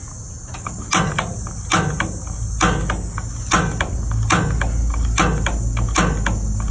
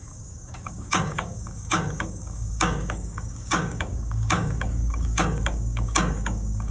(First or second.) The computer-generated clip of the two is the second